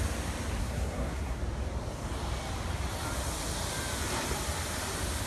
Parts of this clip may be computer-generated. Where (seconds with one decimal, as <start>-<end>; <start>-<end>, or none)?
0.6-1.4